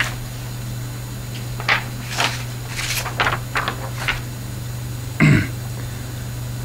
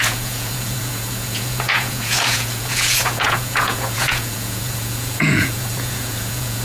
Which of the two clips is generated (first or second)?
second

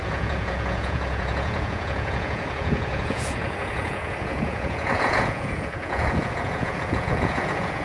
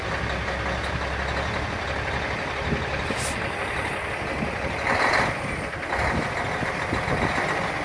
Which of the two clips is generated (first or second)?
first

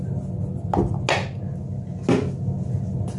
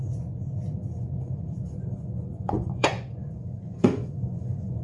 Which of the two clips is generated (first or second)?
second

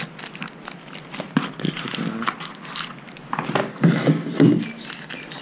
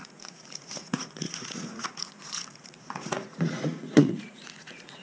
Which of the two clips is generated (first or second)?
second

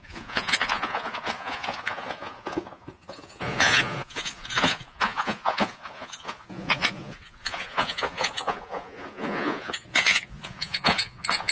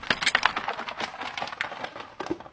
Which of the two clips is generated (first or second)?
first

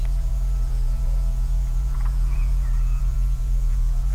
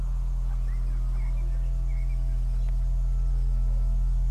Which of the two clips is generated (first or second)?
first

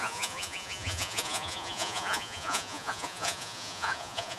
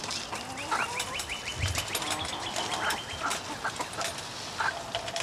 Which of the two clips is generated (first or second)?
first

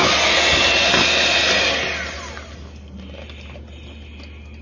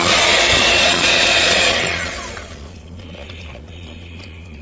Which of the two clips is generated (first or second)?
second